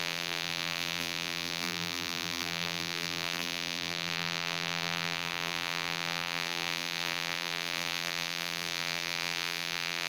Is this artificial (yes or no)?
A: yes